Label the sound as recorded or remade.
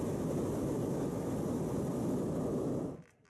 recorded